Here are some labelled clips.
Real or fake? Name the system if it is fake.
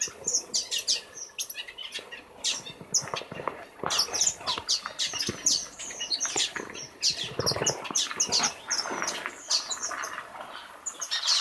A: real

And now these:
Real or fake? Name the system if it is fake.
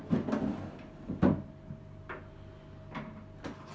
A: real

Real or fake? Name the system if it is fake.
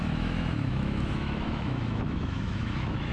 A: fake, autoencoder, DAC-VAE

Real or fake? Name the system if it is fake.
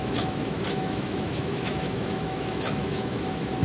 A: fake, autoencoder, DAC-VAE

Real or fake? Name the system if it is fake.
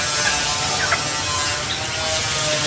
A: real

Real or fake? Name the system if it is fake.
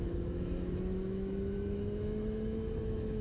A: fake, autoencoder, DAC-VAE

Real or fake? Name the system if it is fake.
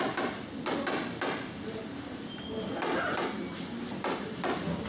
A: real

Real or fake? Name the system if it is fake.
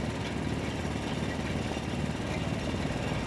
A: real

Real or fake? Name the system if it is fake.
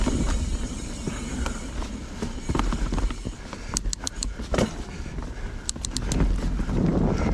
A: real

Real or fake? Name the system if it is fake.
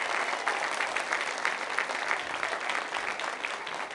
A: real